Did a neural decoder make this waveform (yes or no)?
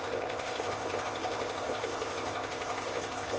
yes